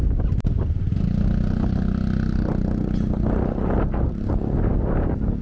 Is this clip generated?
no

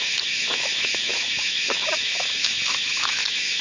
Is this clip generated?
yes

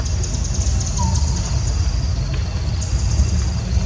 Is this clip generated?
no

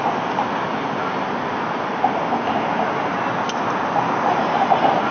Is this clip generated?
no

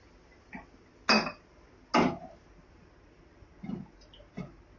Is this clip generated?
no